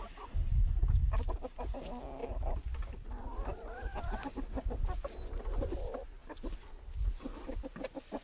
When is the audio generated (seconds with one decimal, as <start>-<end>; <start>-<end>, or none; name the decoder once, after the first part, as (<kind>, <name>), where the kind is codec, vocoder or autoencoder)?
none

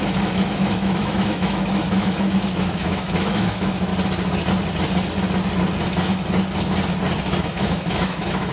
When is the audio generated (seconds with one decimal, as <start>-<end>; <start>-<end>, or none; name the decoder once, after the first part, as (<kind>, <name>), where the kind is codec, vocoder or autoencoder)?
0.0-3.9 (autoencoder, DAC-VAE); 7.4-8.5

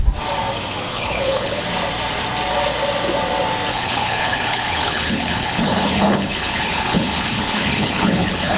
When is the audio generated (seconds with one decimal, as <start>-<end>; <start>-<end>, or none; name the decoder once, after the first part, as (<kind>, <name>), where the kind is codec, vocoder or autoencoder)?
0.9-1.6 (codec, HILCodec); 3.7-8.6

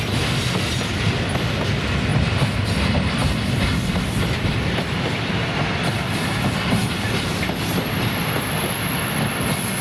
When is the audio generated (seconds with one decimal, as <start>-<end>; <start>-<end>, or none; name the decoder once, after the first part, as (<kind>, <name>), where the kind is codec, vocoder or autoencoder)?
none

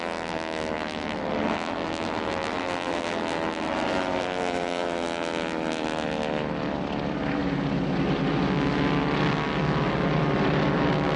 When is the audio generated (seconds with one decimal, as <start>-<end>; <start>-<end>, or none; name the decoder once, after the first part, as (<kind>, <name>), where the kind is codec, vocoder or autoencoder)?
0.0-7.4 (vocoder, BigVGAN v2)